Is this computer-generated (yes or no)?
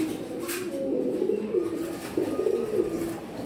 no